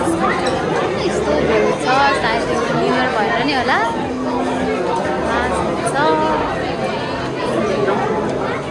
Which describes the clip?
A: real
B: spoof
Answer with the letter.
A